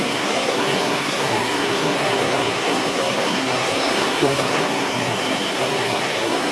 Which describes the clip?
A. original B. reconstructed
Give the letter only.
B